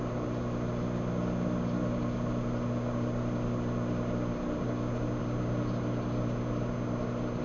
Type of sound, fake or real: real